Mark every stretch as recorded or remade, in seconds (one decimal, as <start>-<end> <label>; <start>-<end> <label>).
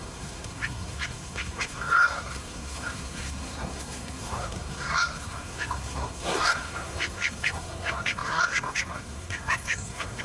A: 0.0-10.2 remade